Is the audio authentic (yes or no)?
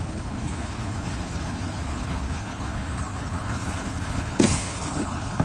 no